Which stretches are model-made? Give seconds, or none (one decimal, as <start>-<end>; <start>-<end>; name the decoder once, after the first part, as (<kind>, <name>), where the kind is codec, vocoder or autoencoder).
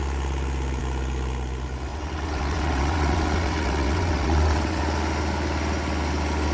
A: 1.9-4.8 (vocoder, WaveNeXt)